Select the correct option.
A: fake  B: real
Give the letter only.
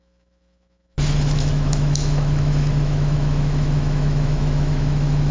A